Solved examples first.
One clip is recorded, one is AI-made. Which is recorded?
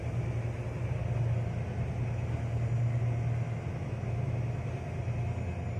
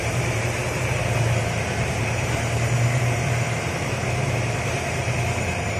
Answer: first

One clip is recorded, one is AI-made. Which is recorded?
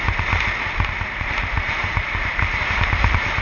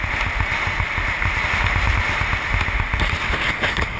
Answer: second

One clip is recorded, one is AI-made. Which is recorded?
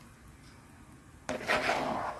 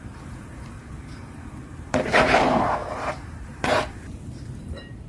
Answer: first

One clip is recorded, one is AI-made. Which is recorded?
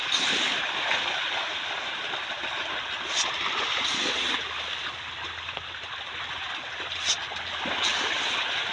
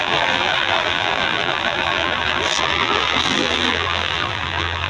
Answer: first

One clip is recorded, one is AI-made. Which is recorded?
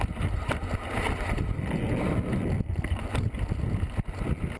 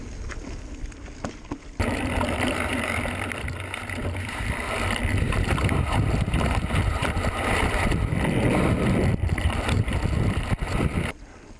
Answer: first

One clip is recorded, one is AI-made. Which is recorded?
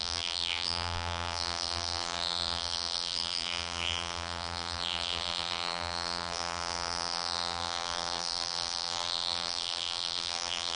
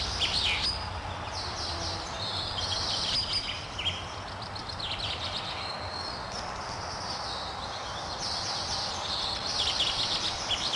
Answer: second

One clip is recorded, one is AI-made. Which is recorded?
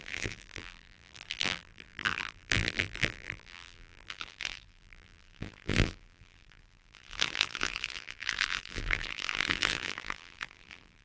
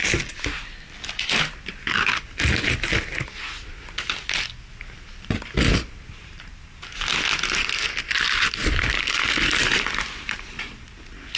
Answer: second